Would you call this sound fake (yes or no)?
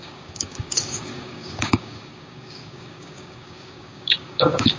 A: yes